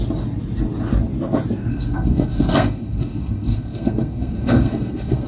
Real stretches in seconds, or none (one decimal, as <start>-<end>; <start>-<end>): 0.0-1.7